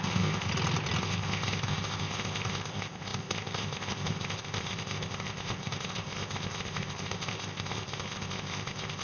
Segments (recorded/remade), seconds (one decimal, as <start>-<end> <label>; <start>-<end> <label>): 0.0-0.5 remade; 0.5-1.0 recorded; 1.0-9.0 remade